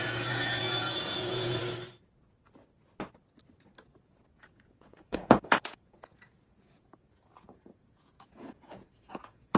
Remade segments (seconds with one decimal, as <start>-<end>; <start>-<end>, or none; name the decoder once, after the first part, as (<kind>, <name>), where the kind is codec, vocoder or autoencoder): 0.0-1.6 (vocoder, Vocos); 4.4-9.6